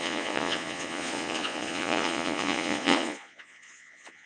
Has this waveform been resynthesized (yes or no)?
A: yes